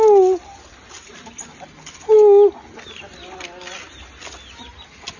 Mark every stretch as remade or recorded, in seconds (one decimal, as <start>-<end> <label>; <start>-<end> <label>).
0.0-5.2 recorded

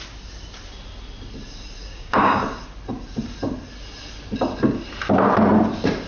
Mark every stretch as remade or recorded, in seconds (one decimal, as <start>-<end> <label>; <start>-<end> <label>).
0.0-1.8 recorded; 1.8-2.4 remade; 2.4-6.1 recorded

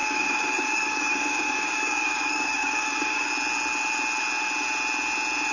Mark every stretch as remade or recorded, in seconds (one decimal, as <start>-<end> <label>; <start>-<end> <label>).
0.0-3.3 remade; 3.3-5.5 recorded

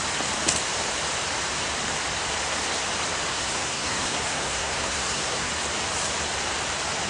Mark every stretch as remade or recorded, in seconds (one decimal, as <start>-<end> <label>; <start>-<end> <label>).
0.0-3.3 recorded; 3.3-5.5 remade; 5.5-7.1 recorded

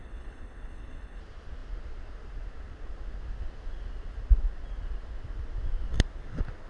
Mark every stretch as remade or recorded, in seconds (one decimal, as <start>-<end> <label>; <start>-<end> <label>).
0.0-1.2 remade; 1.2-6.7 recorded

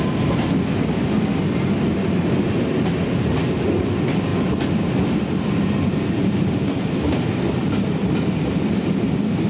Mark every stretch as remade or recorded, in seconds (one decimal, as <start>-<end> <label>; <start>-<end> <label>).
0.0-4.3 recorded; 4.3-8.3 remade; 8.3-9.5 recorded

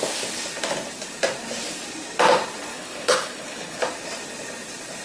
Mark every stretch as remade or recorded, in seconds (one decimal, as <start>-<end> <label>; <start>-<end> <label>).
0.0-2.7 recorded; 2.7-3.8 remade; 3.8-5.0 recorded

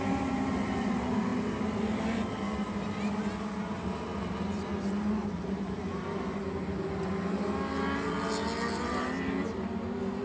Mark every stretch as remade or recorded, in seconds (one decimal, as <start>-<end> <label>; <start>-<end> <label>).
0.0-5.2 recorded; 5.2-5.8 remade; 5.8-10.2 recorded